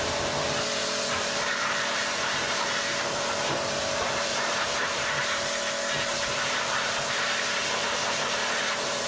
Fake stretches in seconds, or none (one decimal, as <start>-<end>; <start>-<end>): 0.0-9.1